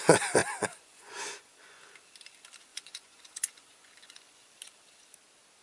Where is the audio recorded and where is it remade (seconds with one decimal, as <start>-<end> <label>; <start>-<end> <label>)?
0.0-0.4 recorded; 0.4-1.8 remade; 1.8-2.7 recorded; 2.7-4.5 remade; 4.5-5.6 recorded

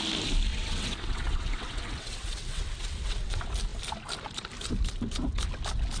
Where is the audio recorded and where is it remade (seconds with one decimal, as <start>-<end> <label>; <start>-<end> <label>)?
0.0-0.5 recorded; 0.5-3.3 remade; 3.3-6.0 recorded

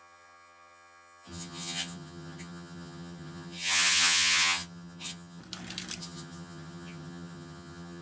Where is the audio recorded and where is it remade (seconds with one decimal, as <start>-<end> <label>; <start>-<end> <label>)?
0.0-5.4 remade; 5.4-6.0 recorded; 6.0-8.0 remade

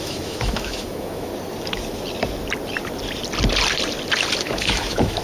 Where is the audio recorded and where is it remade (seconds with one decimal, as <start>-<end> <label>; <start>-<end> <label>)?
0.0-1.3 remade; 1.3-4.4 recorded; 4.4-5.2 remade